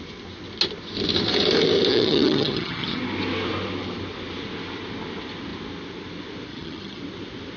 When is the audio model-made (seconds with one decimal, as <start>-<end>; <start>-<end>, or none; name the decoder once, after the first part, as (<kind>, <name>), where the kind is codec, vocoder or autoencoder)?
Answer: 1.9-3.0 (vocoder, HiFi-GAN); 6.5-7.0